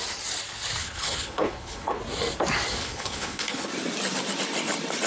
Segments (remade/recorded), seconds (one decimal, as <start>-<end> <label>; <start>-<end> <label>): 0.0-0.8 recorded; 0.8-2.0 remade; 2.0-2.8 recorded; 2.8-3.7 remade; 3.7-5.1 recorded